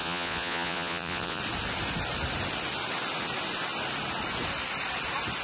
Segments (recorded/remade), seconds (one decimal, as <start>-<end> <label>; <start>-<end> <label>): 0.0-1.4 remade; 1.4-5.4 recorded